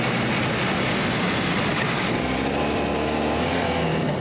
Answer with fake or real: real